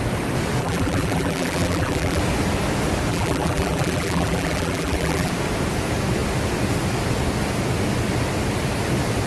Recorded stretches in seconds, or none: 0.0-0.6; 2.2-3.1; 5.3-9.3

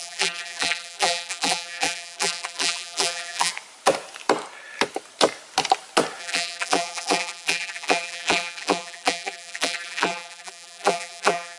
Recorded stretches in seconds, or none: 3.5-6.2